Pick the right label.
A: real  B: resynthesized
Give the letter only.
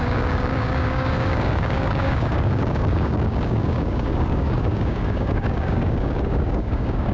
B